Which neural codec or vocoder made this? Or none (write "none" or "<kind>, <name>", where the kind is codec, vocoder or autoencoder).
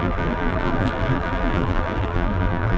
vocoder, BigVGAN v2